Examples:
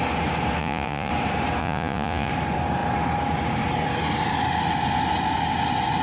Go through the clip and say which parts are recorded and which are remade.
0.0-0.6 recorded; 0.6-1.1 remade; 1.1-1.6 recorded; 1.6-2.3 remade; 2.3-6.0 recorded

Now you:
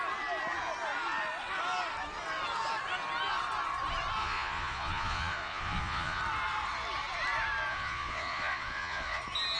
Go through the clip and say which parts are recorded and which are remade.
0.0-4.2 recorded; 4.2-6.2 remade; 6.2-7.7 recorded; 7.7-9.2 remade; 9.2-9.6 recorded

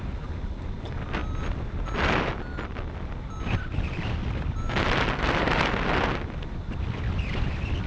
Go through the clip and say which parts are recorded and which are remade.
0.0-7.9 recorded

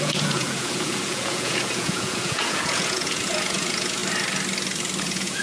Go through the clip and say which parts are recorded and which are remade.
0.0-4.0 remade; 4.0-5.0 recorded; 5.0-5.4 remade

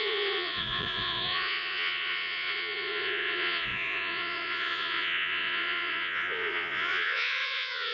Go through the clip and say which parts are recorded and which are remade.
0.0-7.9 remade

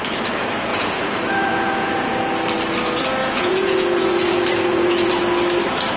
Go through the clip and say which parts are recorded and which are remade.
0.0-0.7 recorded; 0.7-2.2 remade; 2.2-3.2 recorded; 3.2-5.2 remade; 5.2-6.0 recorded